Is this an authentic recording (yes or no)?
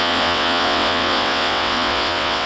no